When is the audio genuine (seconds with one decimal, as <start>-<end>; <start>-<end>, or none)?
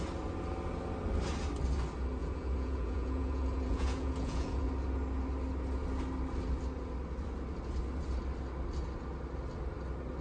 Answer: 0.0-2.2; 4.7-10.2